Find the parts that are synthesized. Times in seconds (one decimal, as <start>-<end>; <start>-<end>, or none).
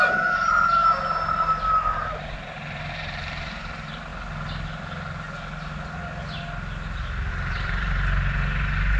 0.0-0.8; 2.1-4.1; 7.3-9.0